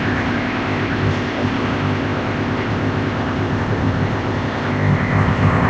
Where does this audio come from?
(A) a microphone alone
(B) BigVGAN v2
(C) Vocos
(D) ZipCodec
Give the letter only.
D